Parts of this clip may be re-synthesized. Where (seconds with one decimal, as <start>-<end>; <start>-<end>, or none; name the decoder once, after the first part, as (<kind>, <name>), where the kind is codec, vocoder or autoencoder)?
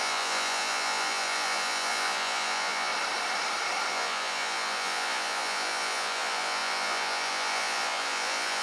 0.0-2.9 (vocoder, Vocos); 3.9-8.6